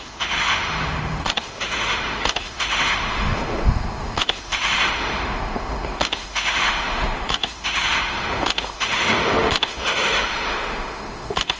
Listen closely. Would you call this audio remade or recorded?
remade